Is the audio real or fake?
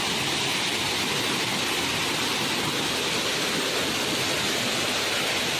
real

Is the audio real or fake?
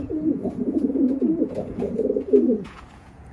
fake